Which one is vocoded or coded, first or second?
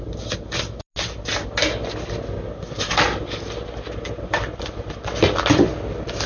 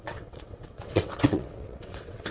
second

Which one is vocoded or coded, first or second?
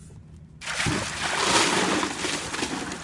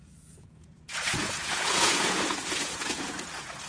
second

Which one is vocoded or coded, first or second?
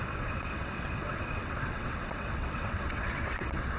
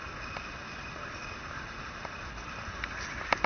first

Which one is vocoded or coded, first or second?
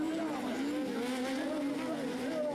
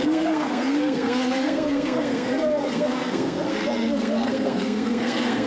second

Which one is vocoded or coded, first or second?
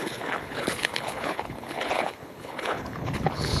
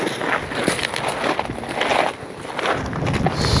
first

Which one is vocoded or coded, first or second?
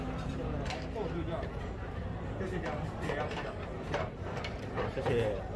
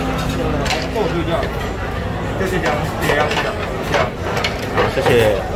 first